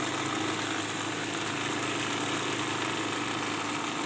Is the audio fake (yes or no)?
no